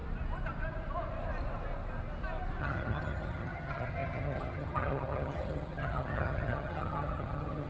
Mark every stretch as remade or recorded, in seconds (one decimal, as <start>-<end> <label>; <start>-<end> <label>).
0.0-2.6 recorded; 2.6-7.7 remade